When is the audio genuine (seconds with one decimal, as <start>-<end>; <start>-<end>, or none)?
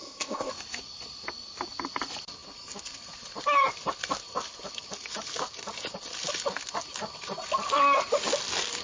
0.5-8.8